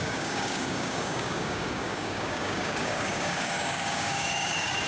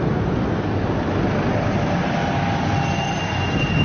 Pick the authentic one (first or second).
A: second